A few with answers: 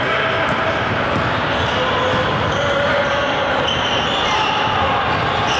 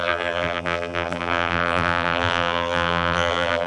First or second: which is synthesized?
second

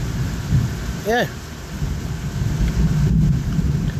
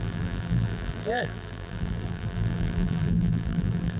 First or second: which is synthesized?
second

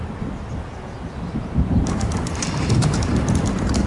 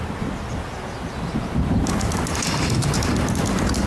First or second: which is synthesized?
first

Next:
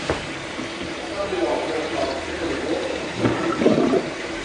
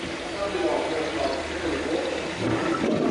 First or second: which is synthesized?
first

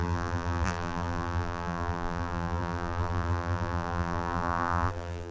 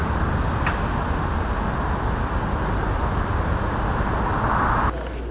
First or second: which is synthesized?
first